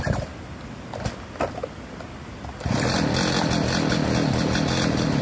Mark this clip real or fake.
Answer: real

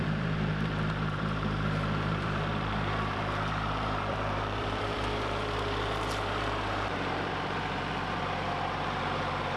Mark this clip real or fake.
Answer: fake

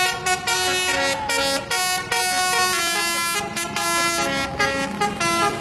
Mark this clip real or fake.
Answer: real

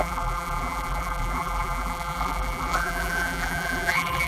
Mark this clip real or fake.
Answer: fake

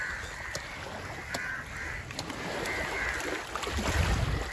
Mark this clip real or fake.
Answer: real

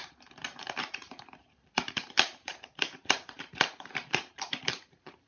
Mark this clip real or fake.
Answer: fake